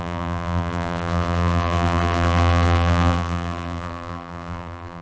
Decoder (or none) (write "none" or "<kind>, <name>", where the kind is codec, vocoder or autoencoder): vocoder, BigVGAN v2